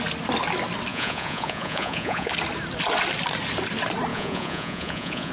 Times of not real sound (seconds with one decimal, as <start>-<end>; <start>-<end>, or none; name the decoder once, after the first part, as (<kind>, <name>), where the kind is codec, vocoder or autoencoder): 0.9-2.3 (vocoder, Vocos); 4.1-5.3